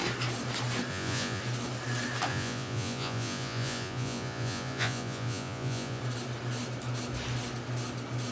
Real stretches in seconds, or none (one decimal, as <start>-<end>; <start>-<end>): 0.0-0.9; 1.4-2.3; 6.0-8.3